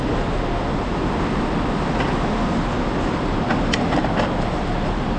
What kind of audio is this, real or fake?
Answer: real